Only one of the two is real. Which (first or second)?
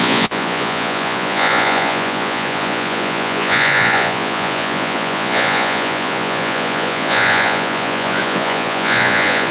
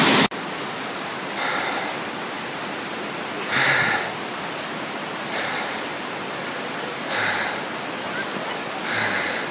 second